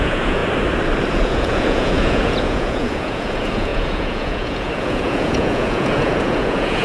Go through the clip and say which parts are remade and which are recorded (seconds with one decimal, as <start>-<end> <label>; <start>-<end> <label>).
0.0-0.4 remade; 0.4-1.1 recorded; 1.1-6.8 remade